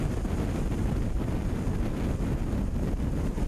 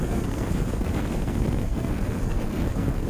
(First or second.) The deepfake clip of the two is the second